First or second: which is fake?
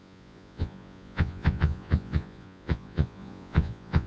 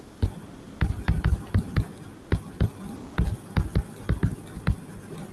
first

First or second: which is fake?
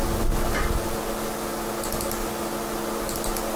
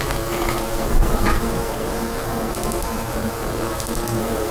second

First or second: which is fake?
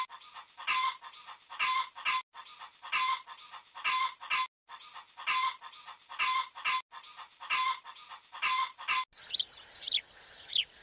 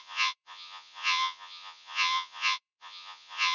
second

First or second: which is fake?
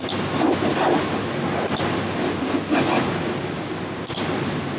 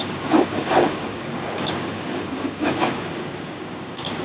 second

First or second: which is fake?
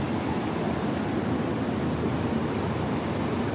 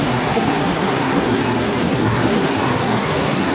second